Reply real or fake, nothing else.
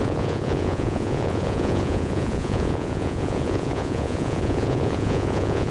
fake